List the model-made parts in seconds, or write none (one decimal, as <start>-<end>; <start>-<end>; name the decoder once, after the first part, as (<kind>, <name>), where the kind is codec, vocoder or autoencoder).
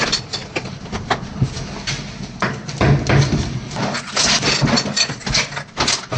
none